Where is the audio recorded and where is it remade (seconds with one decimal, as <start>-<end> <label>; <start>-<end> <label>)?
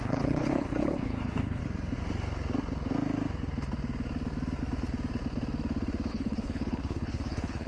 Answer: 0.0-1.6 remade; 1.6-6.1 recorded; 6.1-7.7 remade